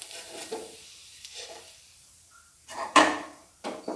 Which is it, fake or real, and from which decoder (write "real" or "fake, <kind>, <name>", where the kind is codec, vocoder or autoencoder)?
fake, vocoder, BigVGAN v2